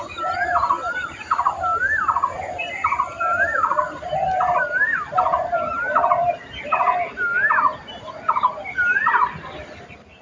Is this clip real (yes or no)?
yes